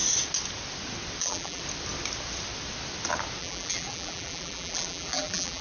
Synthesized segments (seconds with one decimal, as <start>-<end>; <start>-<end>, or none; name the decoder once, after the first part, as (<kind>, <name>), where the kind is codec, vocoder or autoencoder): 1.2-1.6 (vocoder, BigVGAN v2); 3.4-5.6